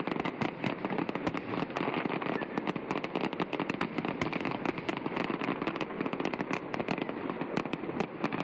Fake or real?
real